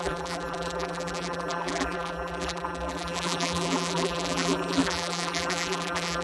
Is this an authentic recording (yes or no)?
no